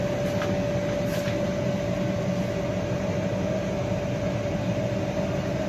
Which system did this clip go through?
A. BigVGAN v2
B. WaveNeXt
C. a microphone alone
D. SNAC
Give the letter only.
C